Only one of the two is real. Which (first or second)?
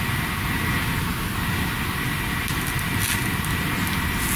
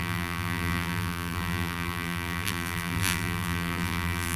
first